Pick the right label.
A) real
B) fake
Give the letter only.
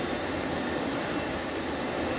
A